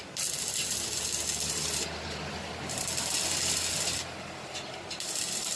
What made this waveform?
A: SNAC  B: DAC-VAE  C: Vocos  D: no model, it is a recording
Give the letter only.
D